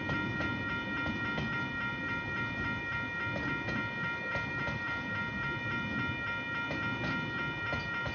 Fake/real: real